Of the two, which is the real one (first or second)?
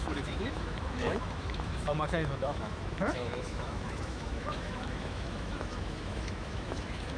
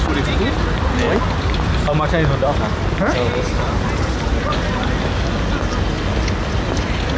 second